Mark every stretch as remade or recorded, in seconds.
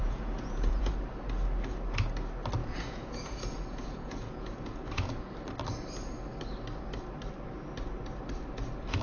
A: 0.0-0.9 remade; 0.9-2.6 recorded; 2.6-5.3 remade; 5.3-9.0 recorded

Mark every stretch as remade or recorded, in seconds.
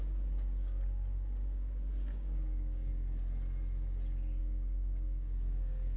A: 0.0-2.9 remade; 2.9-4.4 recorded; 4.4-6.0 remade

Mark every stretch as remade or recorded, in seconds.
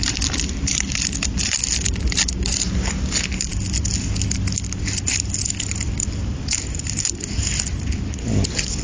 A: 0.0-8.8 recorded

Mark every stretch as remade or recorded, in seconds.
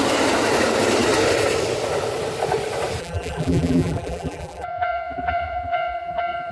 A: 0.0-3.0 recorded; 3.0-6.5 remade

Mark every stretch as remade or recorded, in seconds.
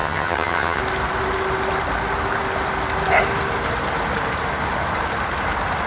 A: 0.0-0.8 remade; 0.8-5.9 recorded